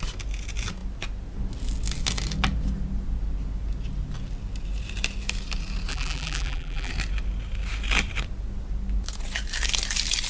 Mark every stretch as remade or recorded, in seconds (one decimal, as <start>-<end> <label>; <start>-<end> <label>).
0.0-5.9 recorded; 5.9-6.9 remade; 6.9-10.3 recorded